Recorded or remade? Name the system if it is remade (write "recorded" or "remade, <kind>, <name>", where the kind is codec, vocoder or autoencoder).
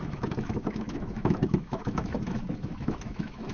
remade, autoencoder, DAC-VAE